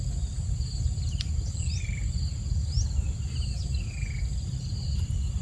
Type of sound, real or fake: real